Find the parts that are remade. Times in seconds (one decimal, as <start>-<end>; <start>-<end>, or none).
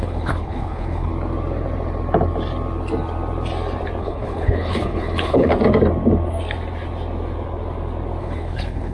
0.0-1.1; 4.0-5.5; 8.2-8.9